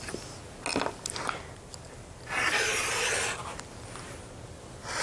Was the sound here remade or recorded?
recorded